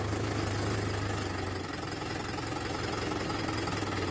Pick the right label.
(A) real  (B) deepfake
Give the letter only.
A